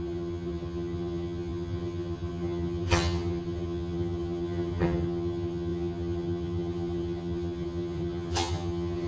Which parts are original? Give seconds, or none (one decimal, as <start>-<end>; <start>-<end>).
none